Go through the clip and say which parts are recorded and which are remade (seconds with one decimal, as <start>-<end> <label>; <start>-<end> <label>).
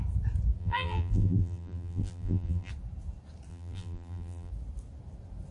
0.0-0.6 recorded; 0.6-2.7 remade; 2.7-3.5 recorded; 3.5-4.5 remade; 4.5-5.5 recorded